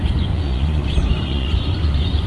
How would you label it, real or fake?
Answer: fake